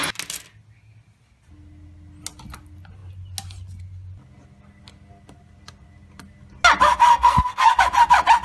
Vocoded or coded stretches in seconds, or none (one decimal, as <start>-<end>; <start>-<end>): 7.1-7.8